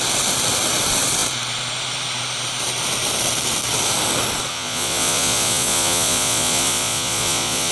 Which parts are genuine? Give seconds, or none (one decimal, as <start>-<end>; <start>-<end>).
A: 0.0-4.5